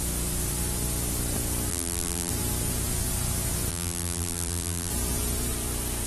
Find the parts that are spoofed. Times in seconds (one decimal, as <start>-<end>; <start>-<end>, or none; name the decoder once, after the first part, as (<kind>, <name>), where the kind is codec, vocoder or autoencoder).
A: 1.7-2.3 (vocoder, BigVGAN v2); 3.7-4.9